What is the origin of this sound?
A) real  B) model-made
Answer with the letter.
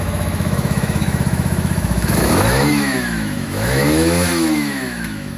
B